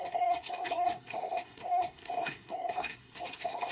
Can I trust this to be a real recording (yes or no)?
no